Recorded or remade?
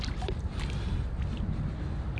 recorded